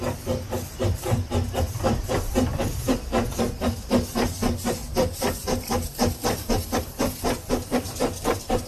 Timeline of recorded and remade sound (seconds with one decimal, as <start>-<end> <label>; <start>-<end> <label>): 0.0-8.7 recorded